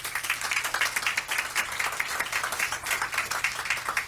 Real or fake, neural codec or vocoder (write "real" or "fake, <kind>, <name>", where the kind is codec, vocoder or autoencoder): real